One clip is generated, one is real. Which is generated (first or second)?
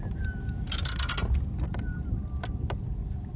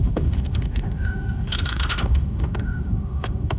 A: second